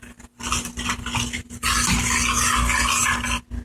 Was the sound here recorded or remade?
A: recorded